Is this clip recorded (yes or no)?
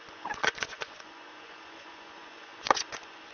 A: no